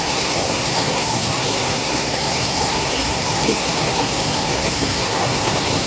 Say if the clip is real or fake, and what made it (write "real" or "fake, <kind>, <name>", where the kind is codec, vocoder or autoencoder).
fake, codec, SNAC